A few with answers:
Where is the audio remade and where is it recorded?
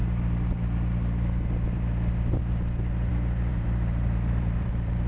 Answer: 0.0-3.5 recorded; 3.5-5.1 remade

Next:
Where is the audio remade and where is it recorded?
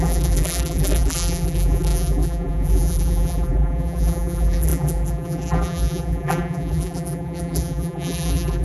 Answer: 0.0-8.6 remade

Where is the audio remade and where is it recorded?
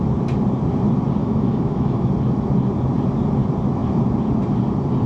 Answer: 0.0-1.2 recorded; 1.2-2.1 remade; 2.1-5.1 recorded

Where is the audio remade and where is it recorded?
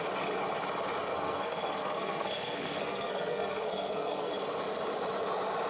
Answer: 0.0-1.1 recorded; 1.1-4.3 remade; 4.3-5.7 recorded